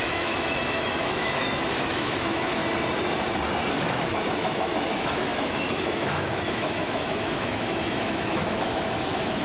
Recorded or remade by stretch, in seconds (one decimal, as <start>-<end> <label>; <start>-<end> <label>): 0.0-2.6 remade; 2.6-3.7 recorded; 3.7-9.4 remade